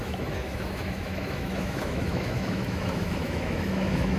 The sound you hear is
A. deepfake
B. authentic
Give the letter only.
A